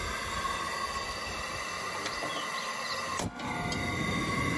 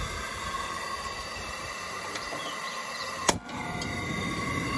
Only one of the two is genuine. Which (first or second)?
first